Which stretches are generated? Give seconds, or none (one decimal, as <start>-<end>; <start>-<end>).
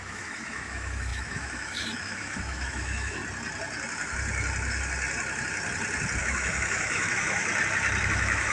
0.0-3.2; 6.2-7.5; 8.0-8.5